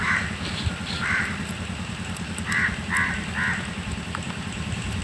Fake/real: real